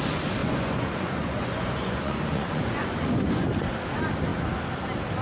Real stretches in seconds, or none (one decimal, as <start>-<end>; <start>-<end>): 0.0-0.4; 3.5-5.2